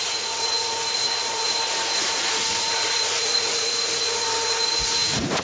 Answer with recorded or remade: remade